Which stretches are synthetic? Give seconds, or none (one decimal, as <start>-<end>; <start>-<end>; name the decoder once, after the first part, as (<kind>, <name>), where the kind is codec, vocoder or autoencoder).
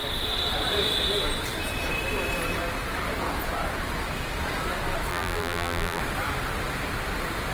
5.1-6.0 (vocoder, BigVGAN v2)